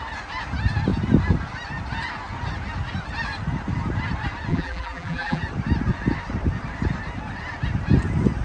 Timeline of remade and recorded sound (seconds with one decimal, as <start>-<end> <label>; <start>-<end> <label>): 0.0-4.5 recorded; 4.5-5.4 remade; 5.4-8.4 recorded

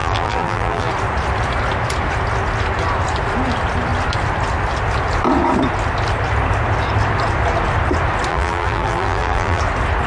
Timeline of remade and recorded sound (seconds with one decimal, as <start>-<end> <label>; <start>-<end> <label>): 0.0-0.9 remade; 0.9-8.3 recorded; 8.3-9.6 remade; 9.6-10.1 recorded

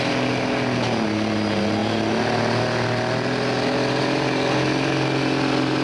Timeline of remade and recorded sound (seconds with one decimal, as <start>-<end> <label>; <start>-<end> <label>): 0.0-5.8 recorded